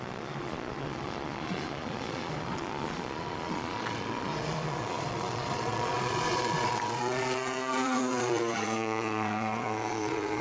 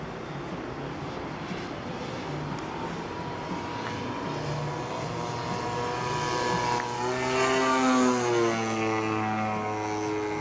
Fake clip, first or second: first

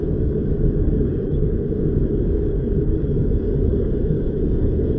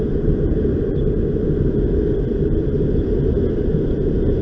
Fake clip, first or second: first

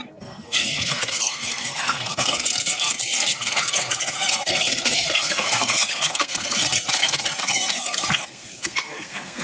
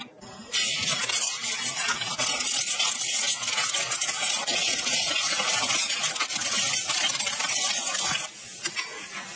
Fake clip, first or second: first